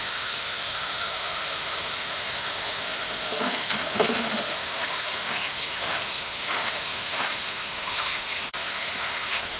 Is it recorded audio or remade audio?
remade